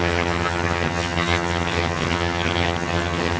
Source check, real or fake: fake